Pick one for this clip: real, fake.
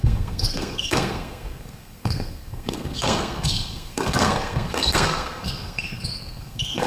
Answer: fake